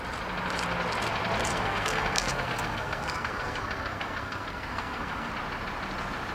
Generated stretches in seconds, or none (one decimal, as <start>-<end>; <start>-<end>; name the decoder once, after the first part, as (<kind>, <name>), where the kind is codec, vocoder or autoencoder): 1.5-5.3 (codec, SNAC)